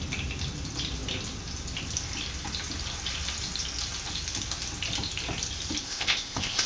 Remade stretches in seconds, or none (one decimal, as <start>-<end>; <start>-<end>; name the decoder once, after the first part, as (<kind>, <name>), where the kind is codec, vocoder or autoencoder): 5.8-6.7 (codec, ZipCodec)